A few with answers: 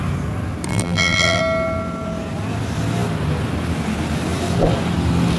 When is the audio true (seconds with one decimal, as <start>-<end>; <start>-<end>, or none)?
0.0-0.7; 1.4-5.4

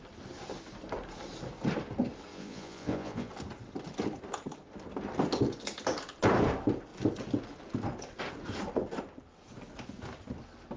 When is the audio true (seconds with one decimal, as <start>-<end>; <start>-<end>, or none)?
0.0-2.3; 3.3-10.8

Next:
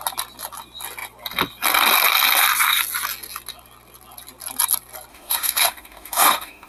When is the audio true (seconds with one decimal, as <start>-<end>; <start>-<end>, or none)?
0.0-5.1

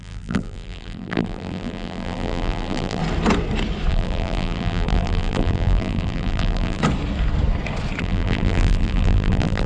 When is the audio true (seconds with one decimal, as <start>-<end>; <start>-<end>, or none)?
3.0-3.9; 6.8-8.0

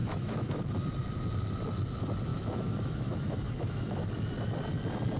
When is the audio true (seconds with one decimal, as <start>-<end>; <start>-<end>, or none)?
0.7-2.3; 4.1-5.2